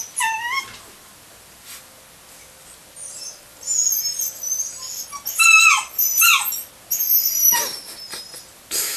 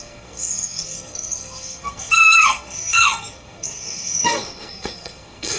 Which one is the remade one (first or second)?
second